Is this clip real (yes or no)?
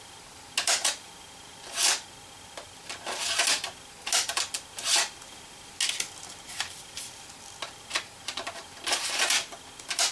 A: yes